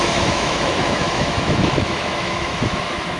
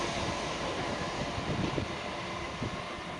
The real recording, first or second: second